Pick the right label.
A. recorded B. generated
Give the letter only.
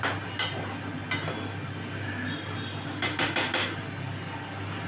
A